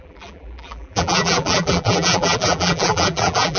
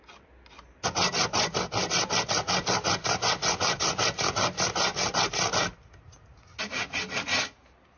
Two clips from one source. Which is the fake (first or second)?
first